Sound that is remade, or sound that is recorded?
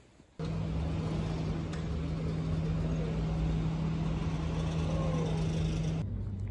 recorded